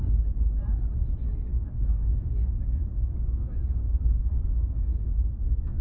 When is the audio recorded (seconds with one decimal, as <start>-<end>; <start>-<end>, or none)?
0.0-1.5; 5.0-5.8